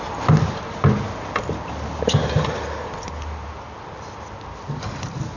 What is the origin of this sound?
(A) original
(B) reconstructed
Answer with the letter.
A